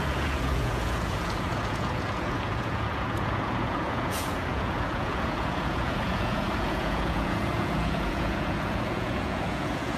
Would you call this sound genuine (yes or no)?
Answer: no